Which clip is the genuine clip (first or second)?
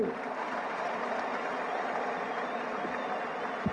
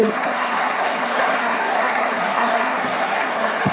first